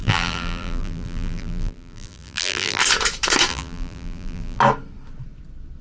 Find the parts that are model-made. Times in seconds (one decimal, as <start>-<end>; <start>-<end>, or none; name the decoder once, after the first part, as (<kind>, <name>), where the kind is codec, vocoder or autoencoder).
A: 0.0-2.8 (vocoder, BigVGAN v2); 3.5-4.6